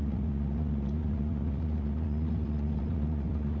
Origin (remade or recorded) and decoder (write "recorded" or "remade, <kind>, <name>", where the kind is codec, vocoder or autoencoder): remade, vocoder, Vocos